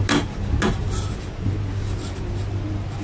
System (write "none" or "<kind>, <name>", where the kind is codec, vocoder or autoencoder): none